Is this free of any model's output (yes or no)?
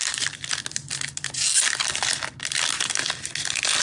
yes